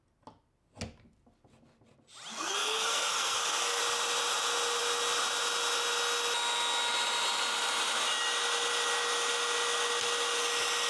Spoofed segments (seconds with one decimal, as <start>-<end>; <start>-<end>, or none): 2.3-3.8